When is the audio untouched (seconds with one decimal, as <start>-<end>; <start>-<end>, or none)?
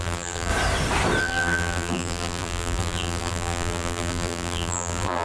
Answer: 0.5-1.2